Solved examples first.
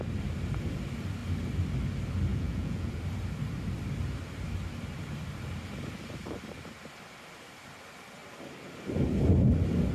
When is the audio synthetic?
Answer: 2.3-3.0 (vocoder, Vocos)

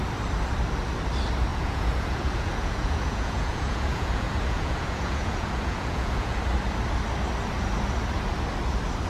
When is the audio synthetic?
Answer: 1.5-6.4 (vocoder, Vocos)

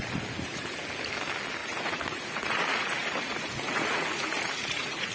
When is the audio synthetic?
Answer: 1.6-5.1 (vocoder, Vocos)

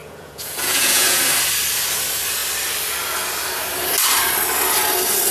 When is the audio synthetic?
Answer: 0.0-1.2 (vocoder, Vocos)

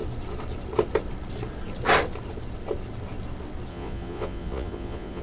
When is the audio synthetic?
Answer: 3.7-5.2 (vocoder, Vocos)

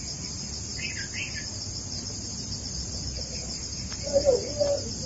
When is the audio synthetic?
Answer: none

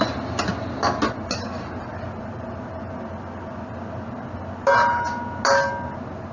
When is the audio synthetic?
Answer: none